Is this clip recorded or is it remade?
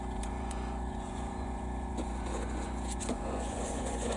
remade